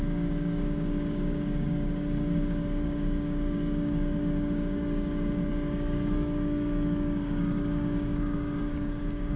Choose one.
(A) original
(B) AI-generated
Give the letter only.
B